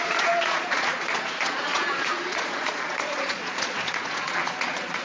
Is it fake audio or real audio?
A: fake